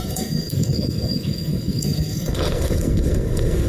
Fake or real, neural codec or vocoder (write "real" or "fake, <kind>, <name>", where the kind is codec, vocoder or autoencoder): fake, codec, SNAC